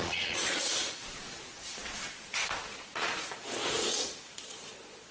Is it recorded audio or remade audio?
remade